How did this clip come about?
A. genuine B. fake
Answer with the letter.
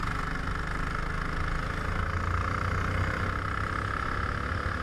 A